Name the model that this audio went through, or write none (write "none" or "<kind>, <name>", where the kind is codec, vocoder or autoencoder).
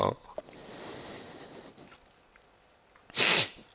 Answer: none